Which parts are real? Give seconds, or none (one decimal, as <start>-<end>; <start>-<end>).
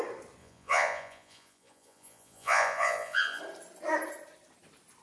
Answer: 0.0-0.4; 3.4-5.0